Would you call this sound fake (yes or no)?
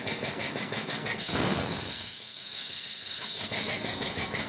yes